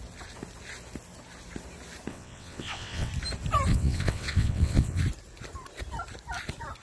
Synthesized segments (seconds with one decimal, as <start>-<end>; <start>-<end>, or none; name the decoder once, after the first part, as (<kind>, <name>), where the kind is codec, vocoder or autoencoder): 2.1-3.1 (vocoder, WaveNeXt); 3.7-5.0